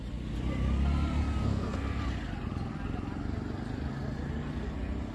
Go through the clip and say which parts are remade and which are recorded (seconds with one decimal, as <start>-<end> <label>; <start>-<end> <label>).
0.0-1.4 recorded; 1.4-2.0 remade; 2.0-5.1 recorded